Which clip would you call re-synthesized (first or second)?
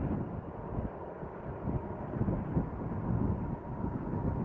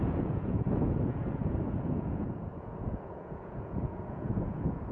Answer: second